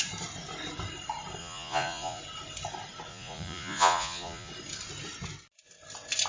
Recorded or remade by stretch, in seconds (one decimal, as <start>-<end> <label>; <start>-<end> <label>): 0.0-1.4 recorded; 1.4-2.2 remade; 2.2-3.1 recorded; 3.1-4.5 remade; 4.5-6.3 recorded